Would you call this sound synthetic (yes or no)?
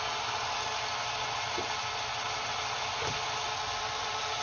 no